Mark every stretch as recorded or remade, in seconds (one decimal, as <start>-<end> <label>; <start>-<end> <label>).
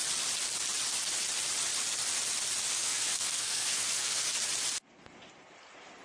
0.0-2.7 recorded; 2.7-4.3 remade; 4.3-6.0 recorded